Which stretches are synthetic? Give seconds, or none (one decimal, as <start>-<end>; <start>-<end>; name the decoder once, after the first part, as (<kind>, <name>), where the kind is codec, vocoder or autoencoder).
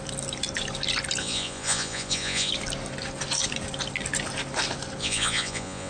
1.2-2.5 (vocoder, Vocos); 5.0-5.9